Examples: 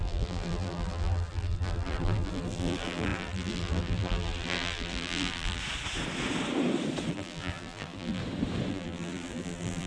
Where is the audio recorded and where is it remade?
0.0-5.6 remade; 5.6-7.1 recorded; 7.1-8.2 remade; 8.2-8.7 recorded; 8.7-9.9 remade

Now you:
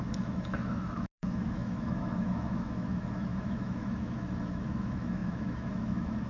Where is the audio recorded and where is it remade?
0.0-6.3 remade

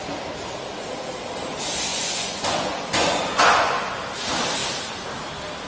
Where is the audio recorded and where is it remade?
0.0-1.9 recorded; 1.9-3.8 remade; 3.8-5.7 recorded

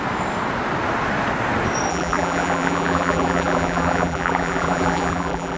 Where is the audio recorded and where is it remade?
0.0-1.9 recorded; 1.9-5.6 remade

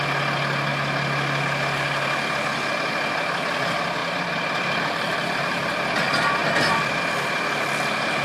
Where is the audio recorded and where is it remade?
0.0-4.0 recorded; 4.0-4.8 remade; 4.8-6.4 recorded; 6.4-7.0 remade; 7.0-8.2 recorded